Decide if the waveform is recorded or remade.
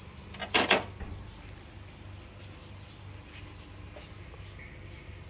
recorded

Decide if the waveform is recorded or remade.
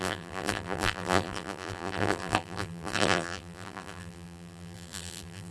remade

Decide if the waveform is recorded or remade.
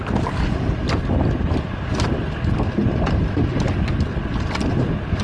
recorded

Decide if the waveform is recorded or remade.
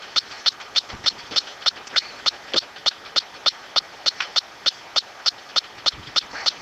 recorded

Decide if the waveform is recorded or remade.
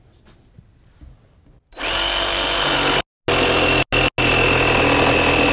recorded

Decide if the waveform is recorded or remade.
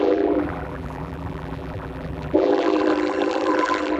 remade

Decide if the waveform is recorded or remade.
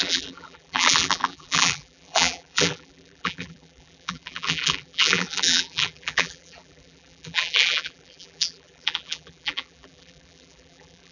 remade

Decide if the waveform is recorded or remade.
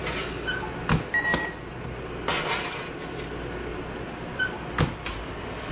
recorded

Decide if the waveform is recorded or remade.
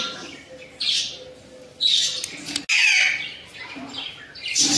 recorded